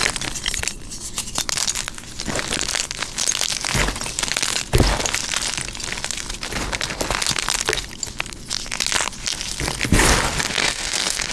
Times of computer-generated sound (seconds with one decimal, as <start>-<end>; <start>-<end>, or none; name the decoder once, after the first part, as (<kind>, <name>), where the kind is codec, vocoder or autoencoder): 10.5-11.3 (codec, SNAC)